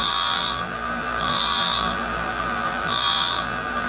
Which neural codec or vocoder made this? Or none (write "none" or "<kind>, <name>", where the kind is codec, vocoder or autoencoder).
vocoder, BigVGAN v2